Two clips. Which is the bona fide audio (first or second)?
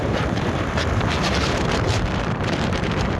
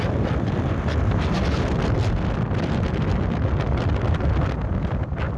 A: second